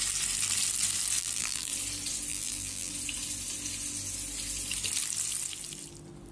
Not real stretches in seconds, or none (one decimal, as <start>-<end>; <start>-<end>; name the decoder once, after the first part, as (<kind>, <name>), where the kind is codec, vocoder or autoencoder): 1.2-1.7 (vocoder, BigVGAN v2); 2.3-2.9